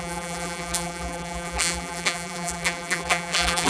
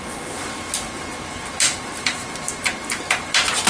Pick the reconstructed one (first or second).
first